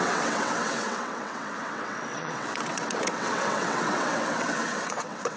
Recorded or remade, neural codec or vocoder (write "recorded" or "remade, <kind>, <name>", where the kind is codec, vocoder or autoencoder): remade, vocoder, WaveNeXt